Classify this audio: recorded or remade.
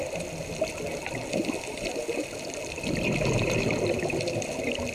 recorded